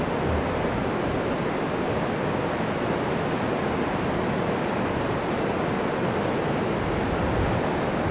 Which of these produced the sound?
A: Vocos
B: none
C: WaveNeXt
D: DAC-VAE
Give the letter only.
B